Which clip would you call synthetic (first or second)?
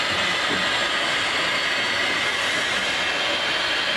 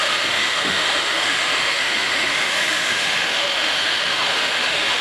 second